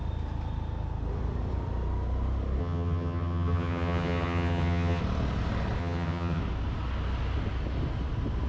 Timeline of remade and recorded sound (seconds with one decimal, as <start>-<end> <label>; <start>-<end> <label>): 0.0-2.6 recorded; 2.6-5.0 remade; 5.0-5.8 recorded; 5.8-6.4 remade; 6.4-8.5 recorded